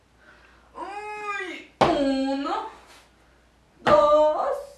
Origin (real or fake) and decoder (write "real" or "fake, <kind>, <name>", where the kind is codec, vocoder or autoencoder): real